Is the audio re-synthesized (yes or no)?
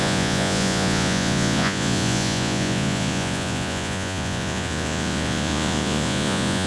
yes